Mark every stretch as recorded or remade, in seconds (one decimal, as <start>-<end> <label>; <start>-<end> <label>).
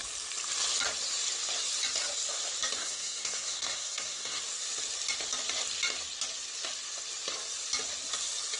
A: 0.0-2.8 recorded; 2.8-4.4 remade; 4.4-8.6 recorded